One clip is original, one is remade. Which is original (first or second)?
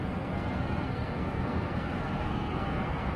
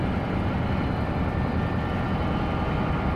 second